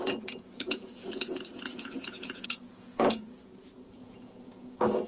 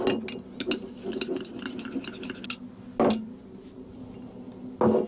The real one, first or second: second